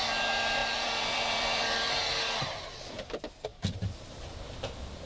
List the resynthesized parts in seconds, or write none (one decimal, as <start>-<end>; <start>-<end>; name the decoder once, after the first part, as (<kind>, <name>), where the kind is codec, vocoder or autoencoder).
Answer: 0.6-1.8 (vocoder, BigVGAN v2)